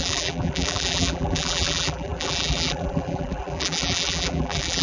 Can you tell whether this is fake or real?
fake